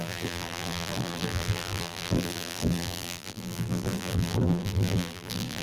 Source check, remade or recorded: remade